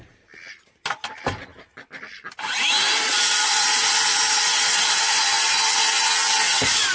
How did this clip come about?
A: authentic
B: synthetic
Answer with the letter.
A